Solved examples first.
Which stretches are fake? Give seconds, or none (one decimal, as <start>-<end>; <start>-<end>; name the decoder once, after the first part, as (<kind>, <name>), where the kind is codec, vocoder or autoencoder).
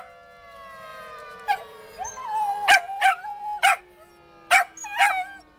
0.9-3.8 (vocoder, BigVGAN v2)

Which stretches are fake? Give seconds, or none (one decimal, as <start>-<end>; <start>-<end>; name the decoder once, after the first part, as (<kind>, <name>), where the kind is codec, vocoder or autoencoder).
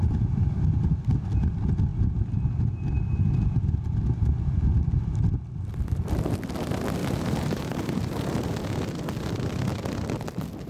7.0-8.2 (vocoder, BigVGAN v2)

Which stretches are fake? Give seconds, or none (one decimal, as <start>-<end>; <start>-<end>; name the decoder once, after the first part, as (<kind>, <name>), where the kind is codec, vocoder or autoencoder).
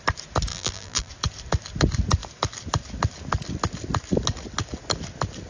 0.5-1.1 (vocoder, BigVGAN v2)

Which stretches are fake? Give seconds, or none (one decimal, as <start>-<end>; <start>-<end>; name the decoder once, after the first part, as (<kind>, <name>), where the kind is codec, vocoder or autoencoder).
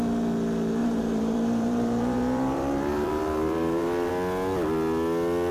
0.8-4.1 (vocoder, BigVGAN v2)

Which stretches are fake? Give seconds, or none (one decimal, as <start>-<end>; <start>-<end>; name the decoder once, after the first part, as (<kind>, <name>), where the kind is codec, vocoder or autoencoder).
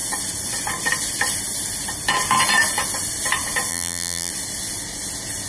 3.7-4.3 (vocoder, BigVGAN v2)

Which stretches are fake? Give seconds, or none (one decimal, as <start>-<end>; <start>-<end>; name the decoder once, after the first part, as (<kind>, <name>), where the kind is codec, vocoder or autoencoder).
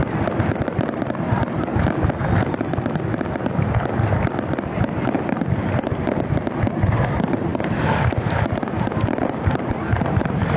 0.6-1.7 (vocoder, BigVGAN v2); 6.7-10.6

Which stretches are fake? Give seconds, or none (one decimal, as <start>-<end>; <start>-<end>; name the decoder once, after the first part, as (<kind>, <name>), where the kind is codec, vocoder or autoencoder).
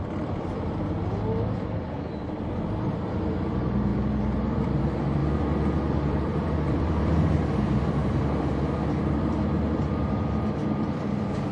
0.0-5.2 (vocoder, BigVGAN v2); 5.9-8.0; 9.0-11.5